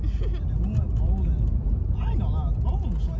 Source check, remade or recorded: recorded